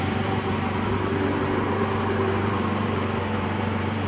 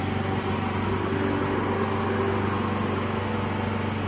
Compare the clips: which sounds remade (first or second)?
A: first